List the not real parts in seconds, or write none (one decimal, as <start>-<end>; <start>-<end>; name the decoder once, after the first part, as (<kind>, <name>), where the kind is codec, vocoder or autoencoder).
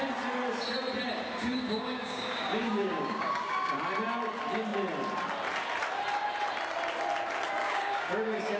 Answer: 1.4-3.8 (codec, DAC); 7.6-8.6